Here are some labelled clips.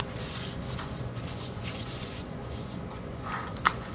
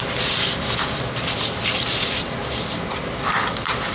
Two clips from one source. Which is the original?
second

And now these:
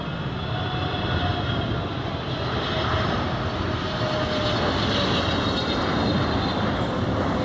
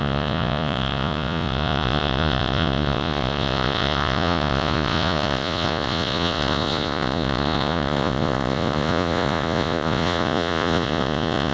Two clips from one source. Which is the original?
first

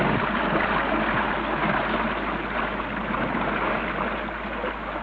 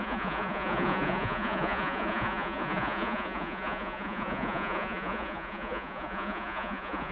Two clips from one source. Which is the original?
first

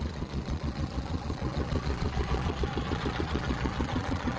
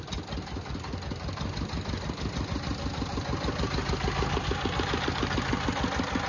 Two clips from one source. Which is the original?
second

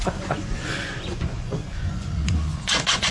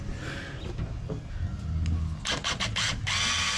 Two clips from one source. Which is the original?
second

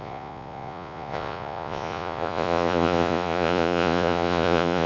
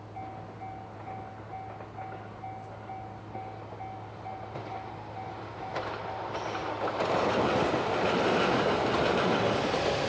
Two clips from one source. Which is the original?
second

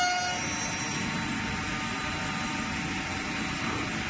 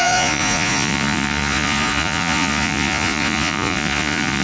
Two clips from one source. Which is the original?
first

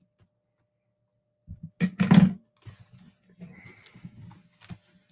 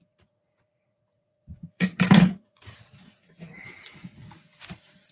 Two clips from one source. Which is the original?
first